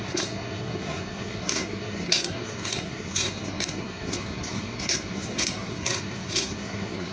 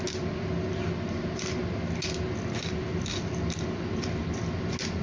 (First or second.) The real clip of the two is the second